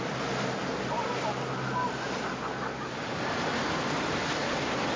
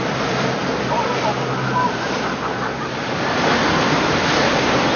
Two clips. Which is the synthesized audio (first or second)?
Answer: second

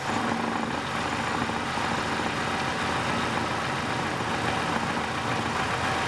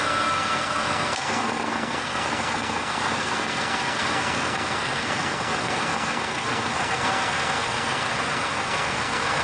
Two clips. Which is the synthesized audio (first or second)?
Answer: second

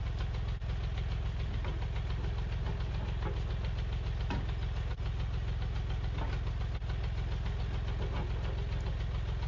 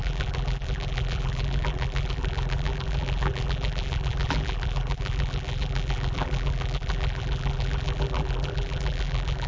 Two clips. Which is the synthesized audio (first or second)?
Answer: second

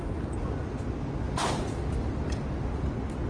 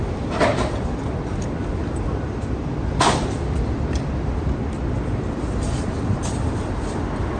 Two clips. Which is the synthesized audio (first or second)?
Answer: second